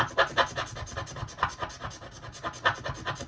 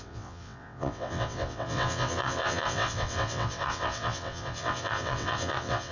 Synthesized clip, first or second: second